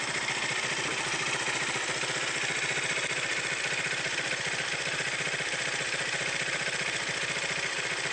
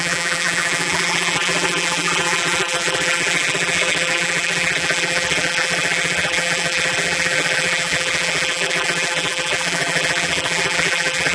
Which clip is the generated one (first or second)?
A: second